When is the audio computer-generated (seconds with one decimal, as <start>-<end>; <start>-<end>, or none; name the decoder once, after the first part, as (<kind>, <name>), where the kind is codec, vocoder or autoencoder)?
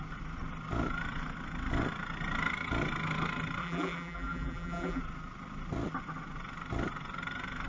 3.6-5.0 (vocoder, BigVGAN v2)